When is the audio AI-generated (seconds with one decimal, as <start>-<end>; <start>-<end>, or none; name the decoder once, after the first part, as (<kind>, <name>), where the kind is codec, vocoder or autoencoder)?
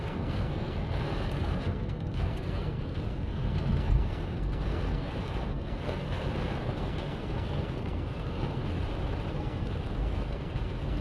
0.0-8.6 (codec, SNAC); 9.3-11.0